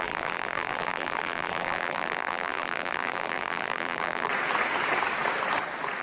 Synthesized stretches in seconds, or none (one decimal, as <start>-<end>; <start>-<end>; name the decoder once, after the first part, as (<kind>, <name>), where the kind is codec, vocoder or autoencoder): 0.0-4.3 (vocoder, BigVGAN v2)